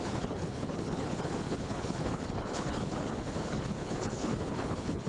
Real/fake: fake